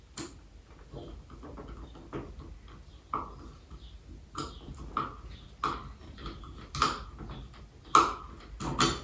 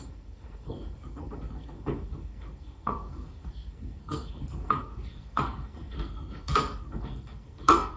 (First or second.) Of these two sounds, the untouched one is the first